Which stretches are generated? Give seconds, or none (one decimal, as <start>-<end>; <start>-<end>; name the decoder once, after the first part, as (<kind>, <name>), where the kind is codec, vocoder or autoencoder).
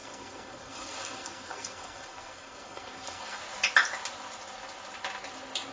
0.0-3.4 (codec, SNAC)